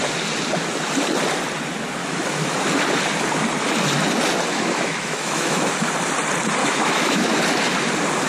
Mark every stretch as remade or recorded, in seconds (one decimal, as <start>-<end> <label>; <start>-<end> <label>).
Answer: 0.0-2.0 recorded; 2.0-2.6 remade; 2.6-4.5 recorded; 4.5-5.9 remade; 5.9-6.6 recorded; 6.6-7.4 remade; 7.4-8.3 recorded